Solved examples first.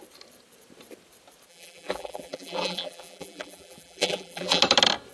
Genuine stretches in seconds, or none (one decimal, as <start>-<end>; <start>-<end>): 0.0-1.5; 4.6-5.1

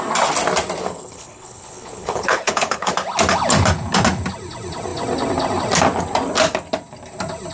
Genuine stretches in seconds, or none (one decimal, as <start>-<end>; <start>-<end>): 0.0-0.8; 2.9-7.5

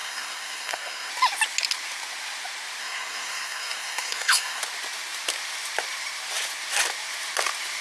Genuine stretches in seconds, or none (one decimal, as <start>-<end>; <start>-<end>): 1.1-2.8; 4.6-7.8

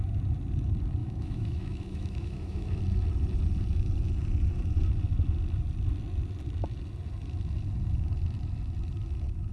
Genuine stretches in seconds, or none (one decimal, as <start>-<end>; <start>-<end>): 0.0-1.0; 2.8-9.5

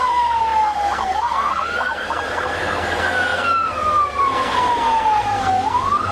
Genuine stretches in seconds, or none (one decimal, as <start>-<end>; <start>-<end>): none

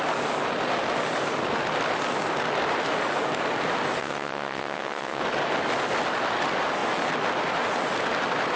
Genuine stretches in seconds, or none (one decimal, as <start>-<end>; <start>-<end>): 0.0-4.0; 5.2-8.6